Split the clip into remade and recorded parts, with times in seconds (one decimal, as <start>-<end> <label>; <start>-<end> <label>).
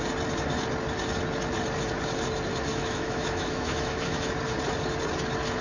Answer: 0.0-2.7 recorded; 2.7-4.3 remade; 4.3-5.6 recorded